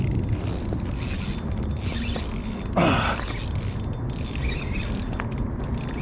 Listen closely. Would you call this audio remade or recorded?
recorded